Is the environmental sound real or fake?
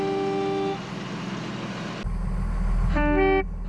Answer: real